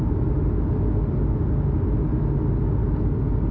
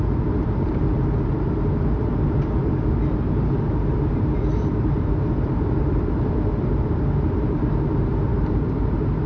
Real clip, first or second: first